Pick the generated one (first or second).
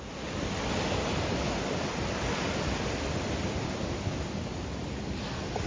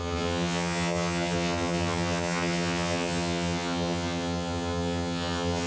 second